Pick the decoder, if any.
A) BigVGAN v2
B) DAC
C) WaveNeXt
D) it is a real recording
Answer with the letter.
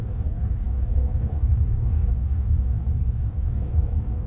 B